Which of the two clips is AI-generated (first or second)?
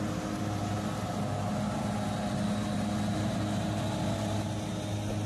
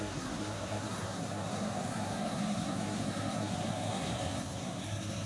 second